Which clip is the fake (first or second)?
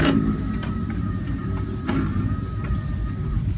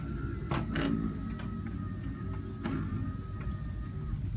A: first